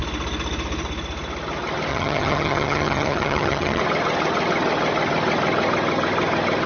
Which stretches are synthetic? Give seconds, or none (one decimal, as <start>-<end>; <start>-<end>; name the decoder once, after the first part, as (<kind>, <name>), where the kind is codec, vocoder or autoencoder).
1.9-3.8 (vocoder, HiFi-GAN)